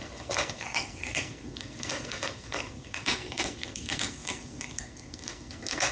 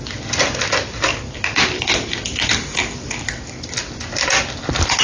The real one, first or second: second